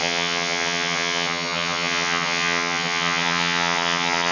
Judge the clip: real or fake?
fake